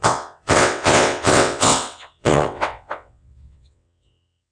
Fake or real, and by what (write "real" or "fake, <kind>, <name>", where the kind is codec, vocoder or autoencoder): fake, vocoder, WaveNeXt